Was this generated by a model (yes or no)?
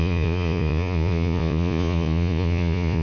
yes